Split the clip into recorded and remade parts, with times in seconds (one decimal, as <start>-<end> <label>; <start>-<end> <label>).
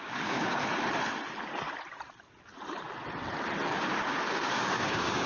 0.0-0.6 remade; 0.6-3.7 recorded; 3.7-5.3 remade